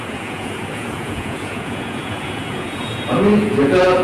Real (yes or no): no